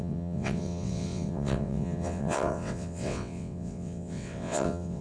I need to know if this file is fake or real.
fake